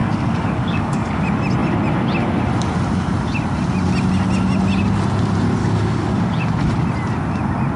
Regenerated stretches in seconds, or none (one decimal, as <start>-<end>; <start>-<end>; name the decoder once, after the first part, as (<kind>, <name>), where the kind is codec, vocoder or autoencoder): 0.0-1.2 (codec, DAC); 5.6-6.2